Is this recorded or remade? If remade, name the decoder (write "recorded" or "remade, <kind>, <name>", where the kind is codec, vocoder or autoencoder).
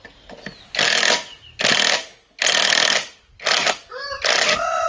recorded